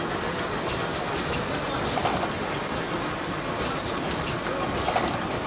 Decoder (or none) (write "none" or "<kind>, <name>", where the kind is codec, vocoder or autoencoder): none